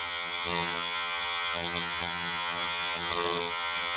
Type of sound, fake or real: fake